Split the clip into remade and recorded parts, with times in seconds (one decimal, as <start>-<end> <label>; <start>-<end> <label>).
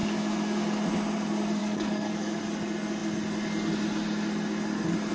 0.0-1.6 recorded; 1.6-2.4 remade; 2.4-5.1 recorded